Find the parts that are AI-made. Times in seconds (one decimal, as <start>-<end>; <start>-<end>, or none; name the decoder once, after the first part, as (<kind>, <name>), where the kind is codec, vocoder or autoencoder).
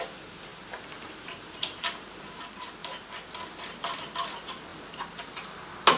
0.5-2.3 (vocoder, BigVGAN v2)